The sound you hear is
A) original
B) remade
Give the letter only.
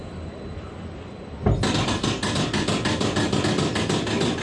A